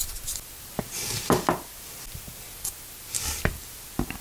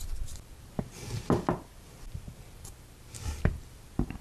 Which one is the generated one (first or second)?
second